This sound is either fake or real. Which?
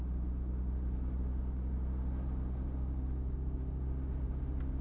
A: real